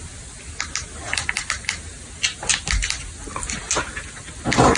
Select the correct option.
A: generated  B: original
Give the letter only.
B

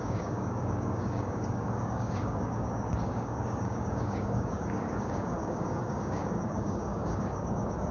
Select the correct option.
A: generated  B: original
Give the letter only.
A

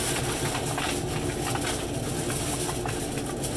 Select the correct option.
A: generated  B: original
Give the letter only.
B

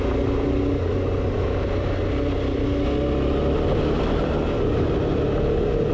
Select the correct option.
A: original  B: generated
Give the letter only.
A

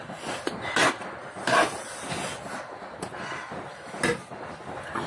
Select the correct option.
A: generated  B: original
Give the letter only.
B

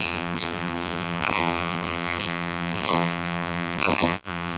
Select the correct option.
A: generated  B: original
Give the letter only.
A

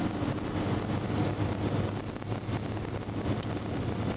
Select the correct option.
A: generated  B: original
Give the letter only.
B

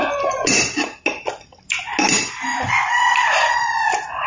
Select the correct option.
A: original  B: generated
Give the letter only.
A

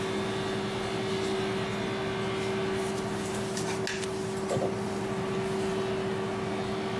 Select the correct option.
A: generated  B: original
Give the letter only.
B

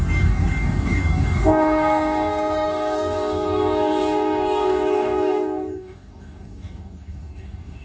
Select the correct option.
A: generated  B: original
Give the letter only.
A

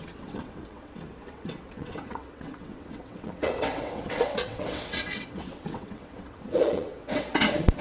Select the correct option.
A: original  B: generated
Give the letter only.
B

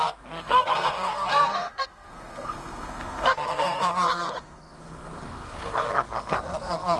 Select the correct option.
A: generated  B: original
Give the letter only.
A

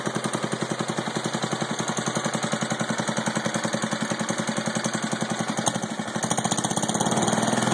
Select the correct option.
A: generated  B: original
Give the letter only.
B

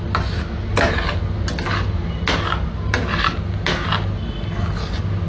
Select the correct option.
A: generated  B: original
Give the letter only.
B